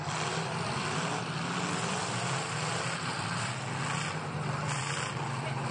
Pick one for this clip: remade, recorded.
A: remade